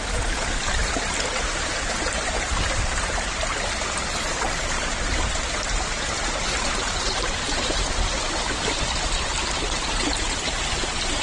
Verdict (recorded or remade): remade